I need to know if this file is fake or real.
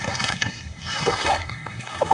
fake